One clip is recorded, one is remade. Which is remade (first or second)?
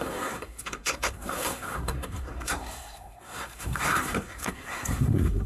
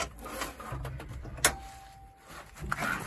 first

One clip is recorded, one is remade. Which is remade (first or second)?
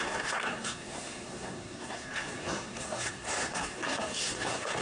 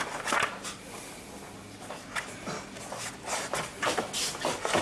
first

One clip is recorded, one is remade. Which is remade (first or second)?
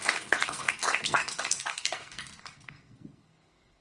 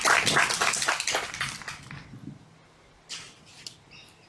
first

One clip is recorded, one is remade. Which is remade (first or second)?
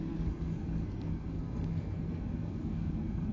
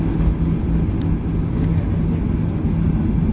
first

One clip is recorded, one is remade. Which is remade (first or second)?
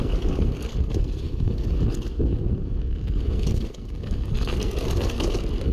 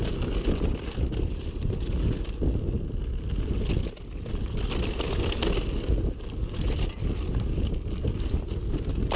first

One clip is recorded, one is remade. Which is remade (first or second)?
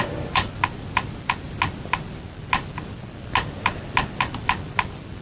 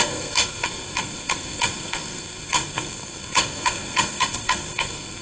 second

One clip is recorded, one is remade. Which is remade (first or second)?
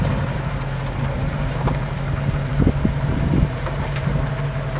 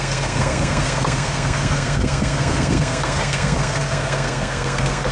second